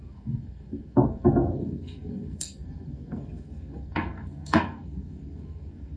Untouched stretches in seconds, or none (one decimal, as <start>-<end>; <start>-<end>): none

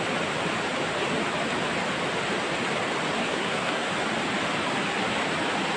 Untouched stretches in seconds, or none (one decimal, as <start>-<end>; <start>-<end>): 0.0-3.2; 3.9-5.8

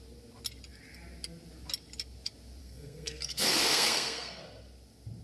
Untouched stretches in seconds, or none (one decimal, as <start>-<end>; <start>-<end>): 0.0-2.6; 4.4-5.2